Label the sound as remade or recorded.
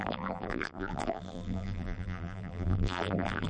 remade